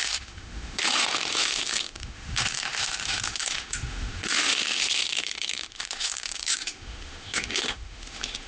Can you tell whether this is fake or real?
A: fake